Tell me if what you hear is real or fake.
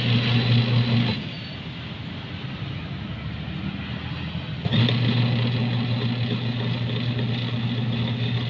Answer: real